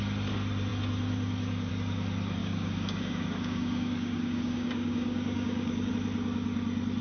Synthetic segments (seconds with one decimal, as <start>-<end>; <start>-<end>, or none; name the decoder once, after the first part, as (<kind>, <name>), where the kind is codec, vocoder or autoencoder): 2.4-5.9 (codec, DAC)